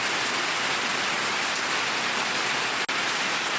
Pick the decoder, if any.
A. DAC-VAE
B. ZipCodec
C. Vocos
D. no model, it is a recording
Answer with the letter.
D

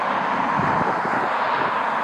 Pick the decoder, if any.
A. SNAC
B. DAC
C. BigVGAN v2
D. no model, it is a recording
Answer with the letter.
D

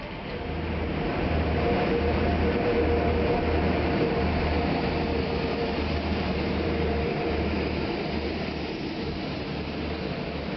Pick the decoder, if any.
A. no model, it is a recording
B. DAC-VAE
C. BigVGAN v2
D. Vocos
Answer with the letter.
C